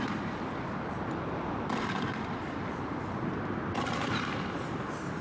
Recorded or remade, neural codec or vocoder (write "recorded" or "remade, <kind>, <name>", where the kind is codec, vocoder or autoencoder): recorded